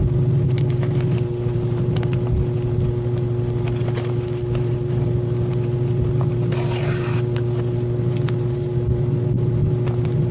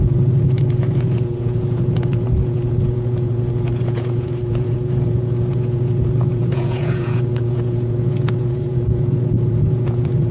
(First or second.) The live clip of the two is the first